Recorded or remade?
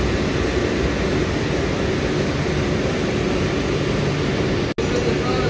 recorded